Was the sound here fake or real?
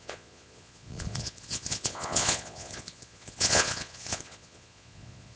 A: fake